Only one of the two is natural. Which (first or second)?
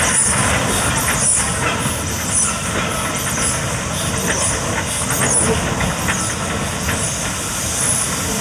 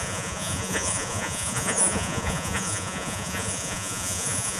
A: first